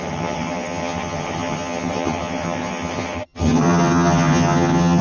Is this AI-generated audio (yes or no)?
yes